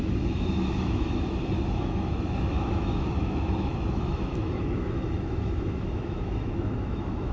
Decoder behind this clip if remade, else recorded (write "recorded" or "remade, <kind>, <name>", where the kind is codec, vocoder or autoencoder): remade, autoencoder, DAC-VAE